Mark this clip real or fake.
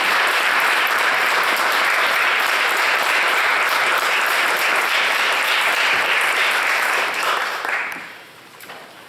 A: fake